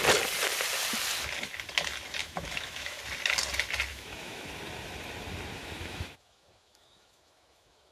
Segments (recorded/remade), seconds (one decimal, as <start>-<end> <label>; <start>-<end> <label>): 0.0-2.2 recorded; 2.2-3.0 remade; 3.0-3.9 recorded; 3.9-4.5 remade; 4.5-5.6 recorded; 5.6-7.9 remade